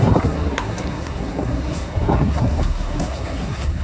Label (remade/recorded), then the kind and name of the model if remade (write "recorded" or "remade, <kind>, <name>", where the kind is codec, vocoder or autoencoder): remade, codec, SNAC